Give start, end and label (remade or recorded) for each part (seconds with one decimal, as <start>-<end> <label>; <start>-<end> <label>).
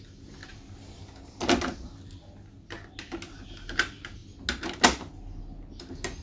0.0-6.2 recorded